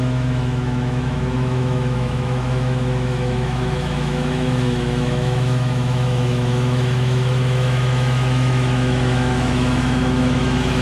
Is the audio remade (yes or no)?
yes